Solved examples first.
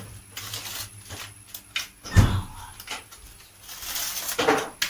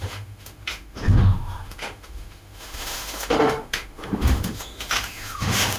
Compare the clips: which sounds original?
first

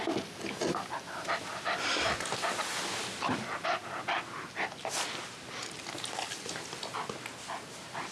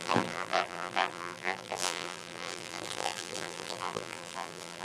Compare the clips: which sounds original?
first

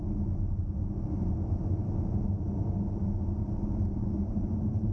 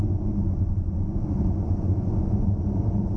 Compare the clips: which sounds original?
first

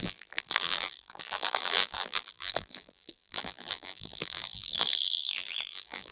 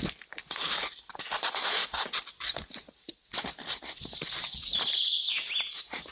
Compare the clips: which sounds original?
second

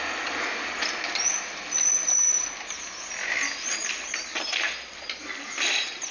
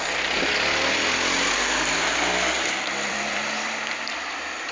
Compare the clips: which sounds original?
first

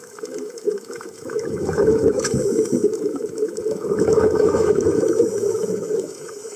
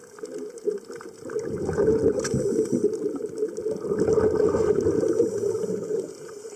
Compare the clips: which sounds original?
second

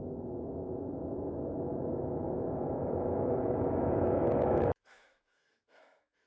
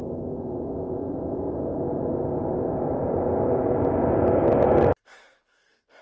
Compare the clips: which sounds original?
second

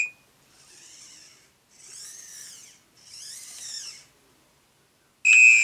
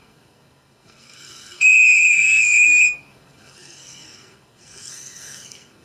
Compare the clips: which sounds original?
first